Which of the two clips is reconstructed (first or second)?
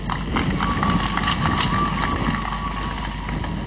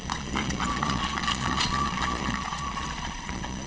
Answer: second